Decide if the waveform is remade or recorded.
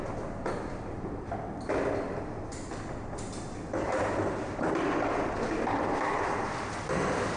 recorded